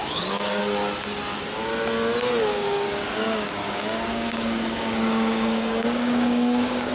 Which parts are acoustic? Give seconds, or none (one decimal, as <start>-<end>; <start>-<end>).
0.6-2.5